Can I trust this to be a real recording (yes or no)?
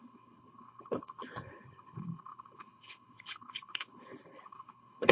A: no